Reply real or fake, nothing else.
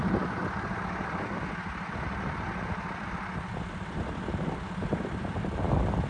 real